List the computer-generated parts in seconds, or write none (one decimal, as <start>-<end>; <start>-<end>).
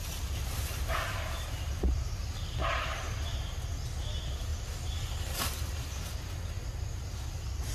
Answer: none